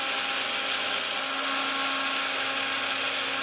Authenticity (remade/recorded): recorded